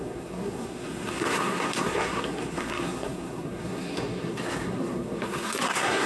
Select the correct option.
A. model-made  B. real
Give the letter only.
A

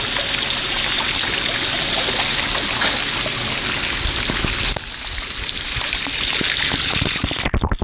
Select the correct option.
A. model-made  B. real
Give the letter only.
B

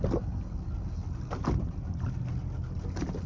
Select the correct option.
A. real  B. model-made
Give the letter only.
A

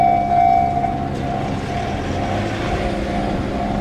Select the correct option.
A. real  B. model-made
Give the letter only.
A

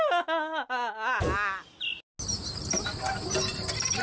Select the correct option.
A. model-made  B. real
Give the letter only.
B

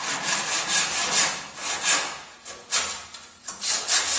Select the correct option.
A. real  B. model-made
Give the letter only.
A